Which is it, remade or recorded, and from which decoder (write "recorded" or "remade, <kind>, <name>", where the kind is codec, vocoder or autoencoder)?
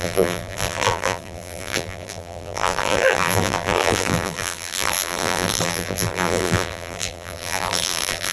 remade, vocoder, BigVGAN v2